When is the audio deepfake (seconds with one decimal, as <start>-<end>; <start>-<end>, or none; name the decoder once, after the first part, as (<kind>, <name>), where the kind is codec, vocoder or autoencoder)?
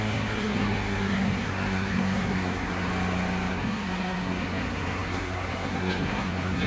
0.0-2.9 (codec, SNAC); 3.5-6.7